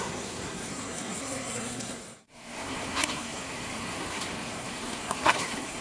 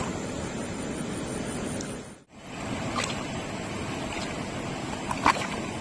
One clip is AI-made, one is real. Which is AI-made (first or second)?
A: first